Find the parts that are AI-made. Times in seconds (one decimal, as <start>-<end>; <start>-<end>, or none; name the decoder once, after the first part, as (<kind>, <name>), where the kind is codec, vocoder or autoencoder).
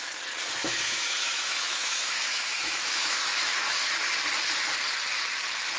0.6-4.1 (autoencoder, DAC-VAE)